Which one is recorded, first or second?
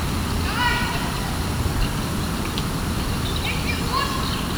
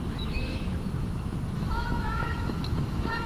first